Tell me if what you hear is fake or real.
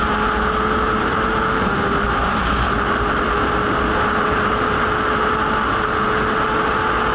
real